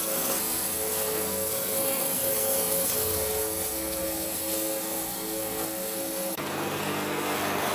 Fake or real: fake